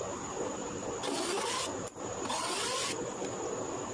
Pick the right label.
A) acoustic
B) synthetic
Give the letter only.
A